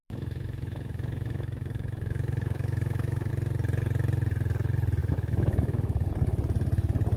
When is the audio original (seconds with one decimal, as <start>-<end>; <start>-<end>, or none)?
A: 3.3-5.0; 6.1-7.2